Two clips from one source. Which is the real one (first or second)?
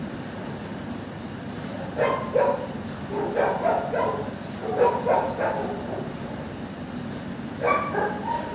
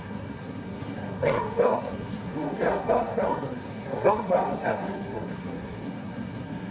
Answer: first